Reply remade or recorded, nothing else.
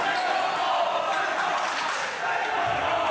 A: recorded